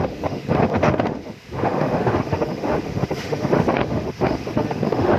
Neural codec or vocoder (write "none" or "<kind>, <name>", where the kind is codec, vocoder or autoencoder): autoencoder, DAC-VAE